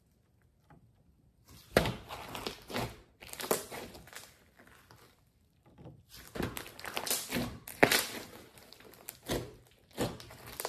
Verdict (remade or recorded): recorded